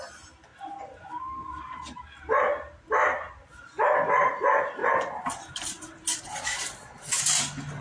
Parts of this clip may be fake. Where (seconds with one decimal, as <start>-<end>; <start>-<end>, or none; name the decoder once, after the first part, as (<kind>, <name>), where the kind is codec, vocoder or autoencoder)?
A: 6.3-7.2 (vocoder, Vocos)